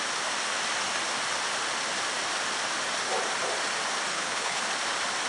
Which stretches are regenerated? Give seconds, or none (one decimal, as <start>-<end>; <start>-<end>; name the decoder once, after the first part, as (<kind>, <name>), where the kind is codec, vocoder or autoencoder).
4.1-4.6 (codec, HILCodec)